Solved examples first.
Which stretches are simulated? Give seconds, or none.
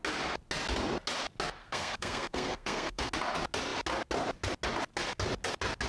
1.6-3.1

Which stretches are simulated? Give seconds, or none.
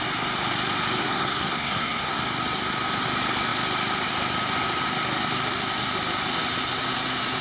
1.0-2.2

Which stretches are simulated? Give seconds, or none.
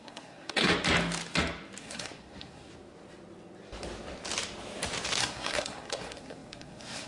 0.0-0.7; 1.8-2.7; 5.2-7.1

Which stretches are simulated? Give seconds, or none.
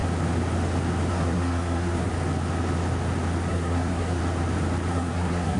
1.1-2.1; 3.5-4.2; 4.9-5.6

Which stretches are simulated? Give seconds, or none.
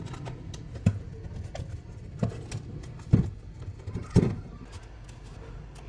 none